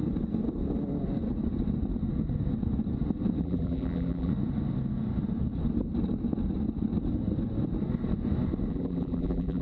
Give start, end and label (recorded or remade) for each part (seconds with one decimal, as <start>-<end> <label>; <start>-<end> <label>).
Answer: 0.0-3.4 recorded; 3.4-4.3 remade; 4.3-8.7 recorded; 8.7-9.6 remade